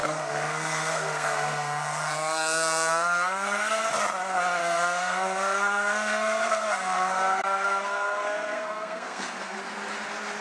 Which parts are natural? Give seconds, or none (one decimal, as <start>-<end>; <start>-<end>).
3.8-4.6; 9.6-10.4